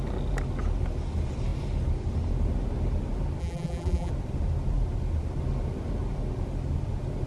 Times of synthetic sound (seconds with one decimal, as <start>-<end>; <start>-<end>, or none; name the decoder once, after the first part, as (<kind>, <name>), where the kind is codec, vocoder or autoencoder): 3.4-4.1 (vocoder, BigVGAN v2)